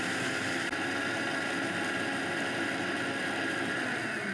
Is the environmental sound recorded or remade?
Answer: recorded